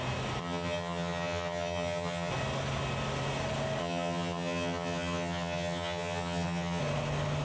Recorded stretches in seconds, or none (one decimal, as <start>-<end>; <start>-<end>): 0.0-0.4; 2.3-3.8; 6.8-7.4